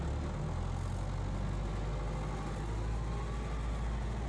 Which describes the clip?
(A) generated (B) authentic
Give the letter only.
B